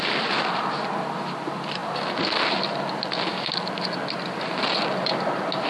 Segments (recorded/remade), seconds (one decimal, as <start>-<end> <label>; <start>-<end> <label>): 0.0-5.7 recorded